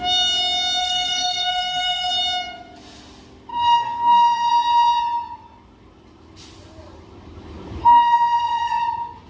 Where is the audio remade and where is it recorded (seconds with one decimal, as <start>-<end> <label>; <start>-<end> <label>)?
0.0-0.8 recorded; 0.8-2.1 remade; 2.1-3.5 recorded; 3.5-4.5 remade; 4.5-7.8 recorded; 7.8-8.8 remade; 8.8-9.3 recorded